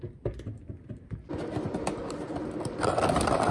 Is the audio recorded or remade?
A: recorded